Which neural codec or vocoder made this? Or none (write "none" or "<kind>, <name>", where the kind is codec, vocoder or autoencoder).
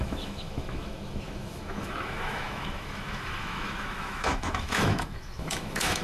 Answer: autoencoder, DAC-VAE